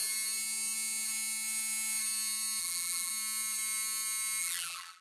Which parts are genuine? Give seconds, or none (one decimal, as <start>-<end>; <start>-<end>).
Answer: 0.0-2.6; 3.1-4.4